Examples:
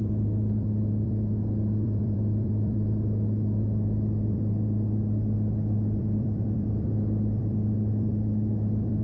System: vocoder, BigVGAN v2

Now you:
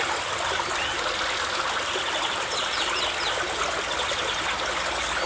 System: none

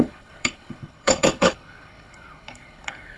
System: codec, HILCodec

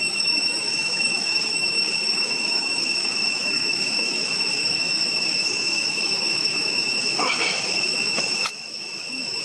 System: autoencoder, DAC-VAE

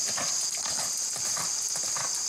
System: none